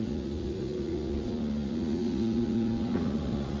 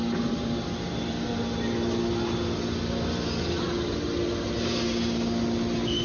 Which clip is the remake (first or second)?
first